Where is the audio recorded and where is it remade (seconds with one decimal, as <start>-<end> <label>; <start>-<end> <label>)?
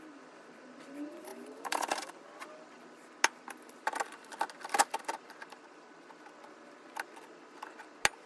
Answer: 0.0-1.3 recorded; 1.3-2.1 remade; 2.1-8.3 recorded